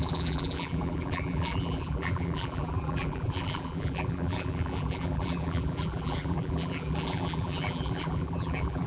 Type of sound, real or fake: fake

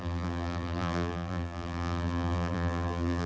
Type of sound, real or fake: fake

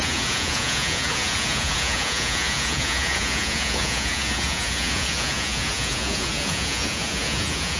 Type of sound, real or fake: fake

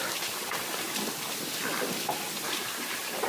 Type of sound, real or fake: real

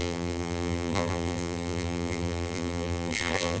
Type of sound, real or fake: fake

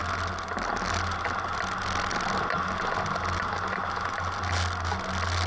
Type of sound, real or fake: real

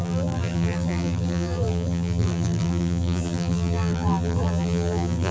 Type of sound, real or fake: fake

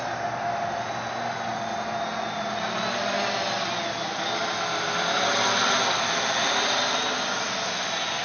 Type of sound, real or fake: real